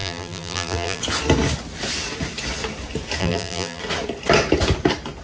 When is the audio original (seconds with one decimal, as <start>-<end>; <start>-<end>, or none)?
1.0-3.2; 3.8-5.2